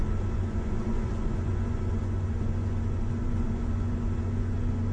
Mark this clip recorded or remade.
remade